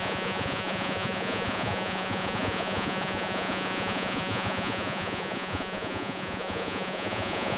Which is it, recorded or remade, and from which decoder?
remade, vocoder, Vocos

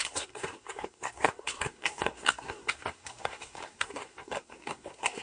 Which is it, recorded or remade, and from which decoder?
remade, codec, SNAC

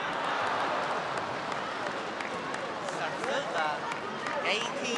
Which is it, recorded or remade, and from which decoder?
recorded